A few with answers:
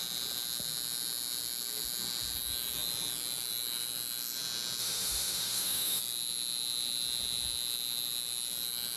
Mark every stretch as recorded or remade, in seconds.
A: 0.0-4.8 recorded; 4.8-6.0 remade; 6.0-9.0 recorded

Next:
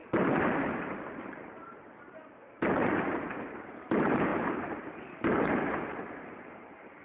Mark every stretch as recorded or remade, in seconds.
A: 0.0-7.0 recorded

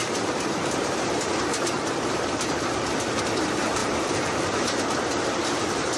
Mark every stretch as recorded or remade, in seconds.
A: 0.0-6.0 remade